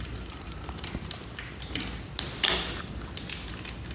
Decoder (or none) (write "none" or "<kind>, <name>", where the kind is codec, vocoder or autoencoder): none